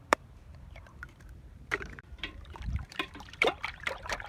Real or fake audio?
fake